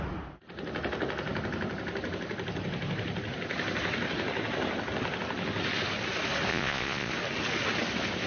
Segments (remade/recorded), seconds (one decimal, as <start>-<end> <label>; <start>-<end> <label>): 0.0-6.5 recorded; 6.5-7.1 remade; 7.1-8.3 recorded